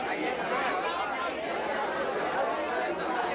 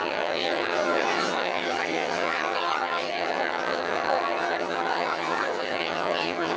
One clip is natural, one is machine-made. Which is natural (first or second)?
first